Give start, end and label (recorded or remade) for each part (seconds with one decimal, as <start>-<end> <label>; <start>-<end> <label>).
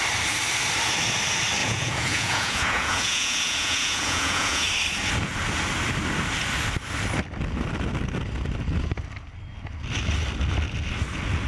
0.0-1.6 recorded; 1.6-4.7 remade; 4.7-11.5 recorded